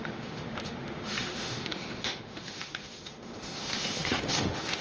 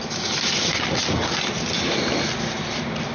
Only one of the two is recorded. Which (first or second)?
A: second